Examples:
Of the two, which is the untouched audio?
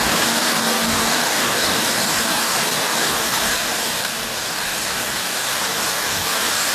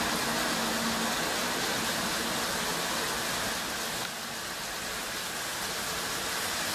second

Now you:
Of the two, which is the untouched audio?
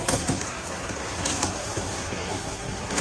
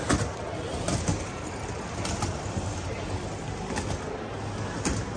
second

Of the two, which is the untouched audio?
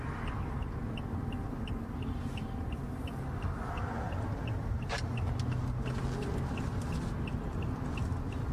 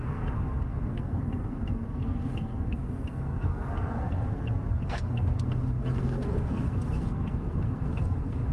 first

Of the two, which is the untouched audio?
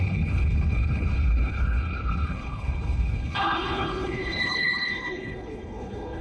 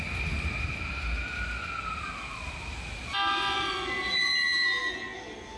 second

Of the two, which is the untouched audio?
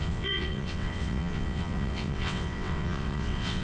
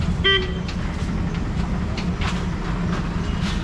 second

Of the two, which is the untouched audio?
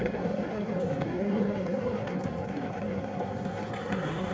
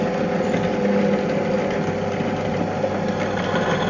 second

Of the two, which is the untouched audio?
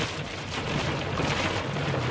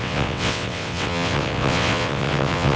first